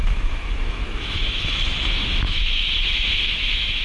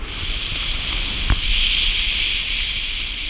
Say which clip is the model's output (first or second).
first